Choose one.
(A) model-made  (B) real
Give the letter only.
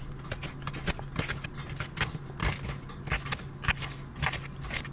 B